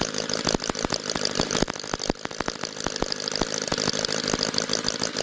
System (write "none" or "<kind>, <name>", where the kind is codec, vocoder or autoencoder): none